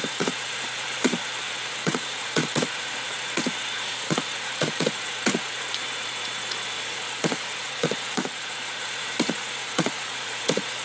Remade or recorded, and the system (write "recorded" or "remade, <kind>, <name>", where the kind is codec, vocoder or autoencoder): remade, vocoder, Vocos